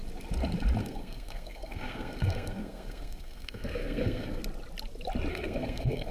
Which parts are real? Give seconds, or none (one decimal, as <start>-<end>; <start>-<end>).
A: 0.0-0.8; 4.4-5.3